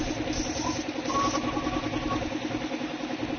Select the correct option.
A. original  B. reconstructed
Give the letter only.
A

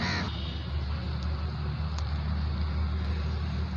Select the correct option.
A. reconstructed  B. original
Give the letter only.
B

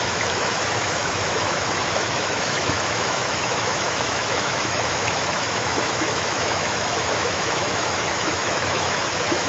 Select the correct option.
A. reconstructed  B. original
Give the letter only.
A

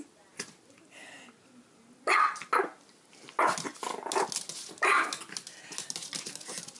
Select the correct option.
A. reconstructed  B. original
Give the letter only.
B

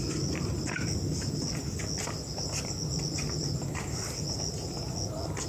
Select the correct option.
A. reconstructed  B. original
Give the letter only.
B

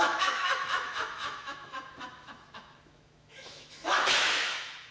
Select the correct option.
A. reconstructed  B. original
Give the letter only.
A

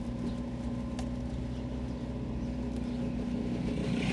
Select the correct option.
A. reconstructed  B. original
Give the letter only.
B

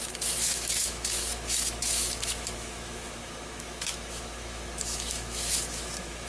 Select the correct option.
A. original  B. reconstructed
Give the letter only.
B